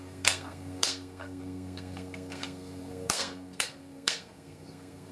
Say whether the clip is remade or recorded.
remade